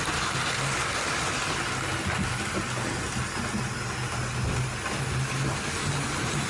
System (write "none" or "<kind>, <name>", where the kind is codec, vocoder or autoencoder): none